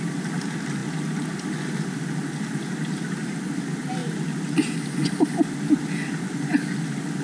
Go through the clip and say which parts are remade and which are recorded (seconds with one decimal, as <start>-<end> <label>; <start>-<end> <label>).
0.0-7.2 recorded